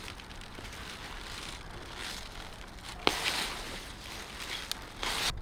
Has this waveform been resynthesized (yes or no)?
no